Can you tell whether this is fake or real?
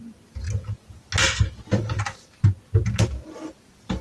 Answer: real